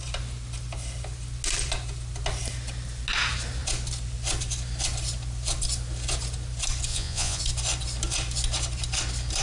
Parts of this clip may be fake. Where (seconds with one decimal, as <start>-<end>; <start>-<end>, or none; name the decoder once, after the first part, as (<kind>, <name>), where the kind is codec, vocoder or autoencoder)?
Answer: 6.9-7.4 (vocoder, Vocos)